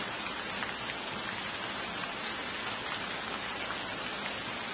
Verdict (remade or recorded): recorded